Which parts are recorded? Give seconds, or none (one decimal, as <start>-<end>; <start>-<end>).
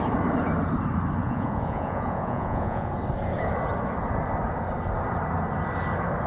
0.0-1.2; 2.9-6.3